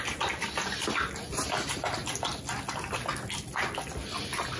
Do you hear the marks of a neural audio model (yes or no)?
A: no